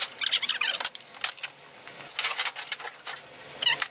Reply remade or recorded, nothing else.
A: recorded